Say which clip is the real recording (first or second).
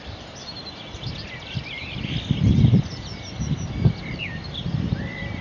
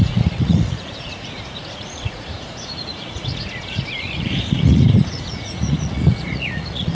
first